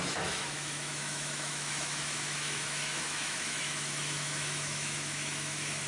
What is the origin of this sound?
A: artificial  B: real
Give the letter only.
A